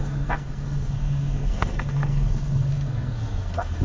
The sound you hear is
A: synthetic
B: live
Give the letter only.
A